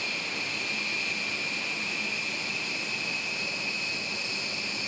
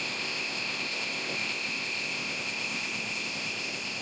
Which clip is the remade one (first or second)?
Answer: second